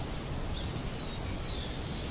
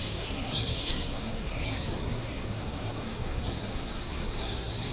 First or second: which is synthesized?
second